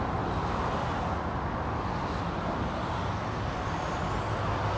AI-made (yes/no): no